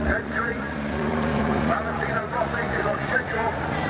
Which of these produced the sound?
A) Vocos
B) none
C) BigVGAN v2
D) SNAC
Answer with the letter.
A